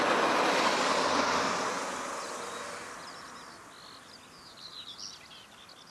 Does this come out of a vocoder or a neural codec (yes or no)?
no